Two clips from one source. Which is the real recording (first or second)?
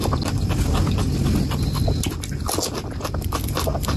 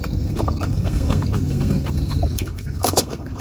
first